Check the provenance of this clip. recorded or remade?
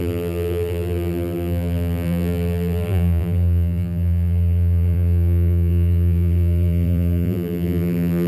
remade